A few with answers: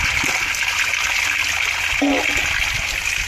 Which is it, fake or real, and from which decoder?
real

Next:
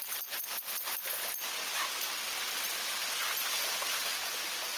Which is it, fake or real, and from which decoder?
real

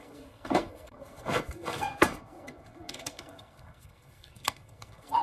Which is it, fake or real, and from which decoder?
fake, codec, SNAC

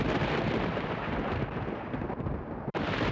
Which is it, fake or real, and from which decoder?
real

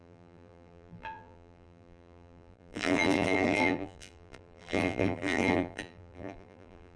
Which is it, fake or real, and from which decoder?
fake, vocoder, BigVGAN v2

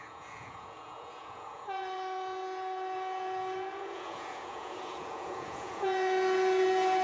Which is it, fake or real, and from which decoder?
fake, vocoder, Vocos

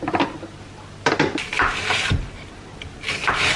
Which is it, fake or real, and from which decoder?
real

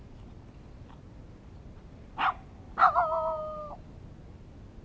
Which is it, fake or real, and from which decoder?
real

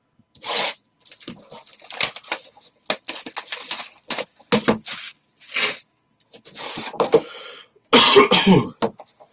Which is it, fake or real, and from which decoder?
real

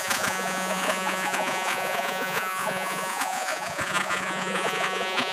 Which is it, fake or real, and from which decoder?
fake, vocoder, Vocos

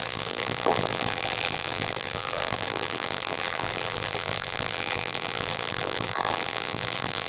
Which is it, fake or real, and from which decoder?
fake, vocoder, BigVGAN v2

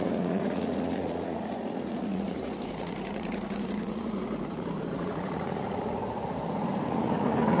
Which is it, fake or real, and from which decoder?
fake, vocoder, Vocos